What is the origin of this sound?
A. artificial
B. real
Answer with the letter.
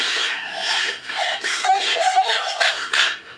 A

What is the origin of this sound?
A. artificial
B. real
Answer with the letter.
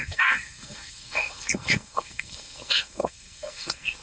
A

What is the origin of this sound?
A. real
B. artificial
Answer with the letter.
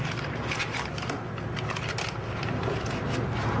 A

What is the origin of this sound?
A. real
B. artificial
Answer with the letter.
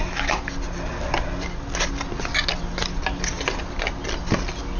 A